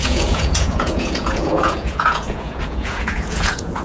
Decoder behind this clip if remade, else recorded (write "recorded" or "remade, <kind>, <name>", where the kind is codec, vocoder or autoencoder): remade, vocoder, Vocos